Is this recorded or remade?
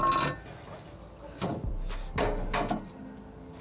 recorded